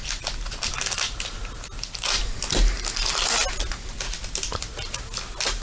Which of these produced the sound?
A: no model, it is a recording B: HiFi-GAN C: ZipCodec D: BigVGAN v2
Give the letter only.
A